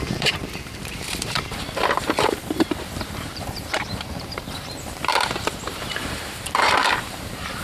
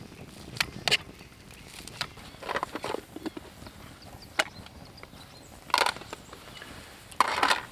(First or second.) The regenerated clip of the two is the first